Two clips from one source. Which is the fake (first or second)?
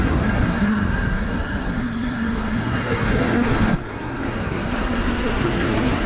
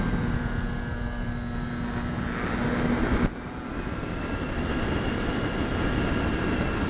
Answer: first